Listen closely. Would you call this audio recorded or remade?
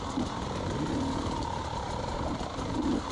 remade